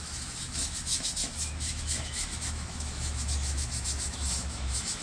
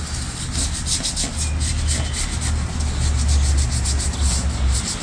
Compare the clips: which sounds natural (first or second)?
second